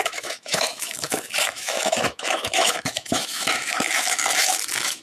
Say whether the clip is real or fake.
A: fake